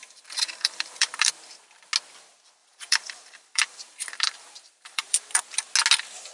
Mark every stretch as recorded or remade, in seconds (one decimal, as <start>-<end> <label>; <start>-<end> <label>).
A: 0.0-1.3 remade; 1.3-2.6 recorded; 2.6-5.4 remade; 5.4-6.3 recorded